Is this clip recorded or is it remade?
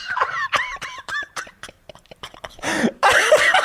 remade